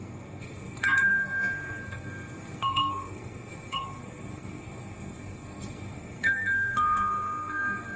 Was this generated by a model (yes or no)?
yes